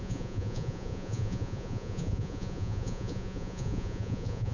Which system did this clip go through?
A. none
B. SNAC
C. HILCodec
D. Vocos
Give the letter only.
D